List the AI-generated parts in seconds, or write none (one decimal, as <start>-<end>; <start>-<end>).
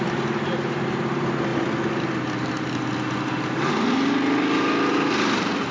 0.0-1.5; 4.9-5.7